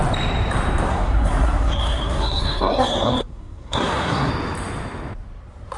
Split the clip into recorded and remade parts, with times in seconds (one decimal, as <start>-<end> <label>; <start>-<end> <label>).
0.0-0.9 recorded; 0.9-4.3 remade; 4.3-5.8 recorded